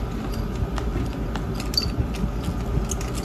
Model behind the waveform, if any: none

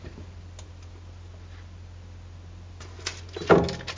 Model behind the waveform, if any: none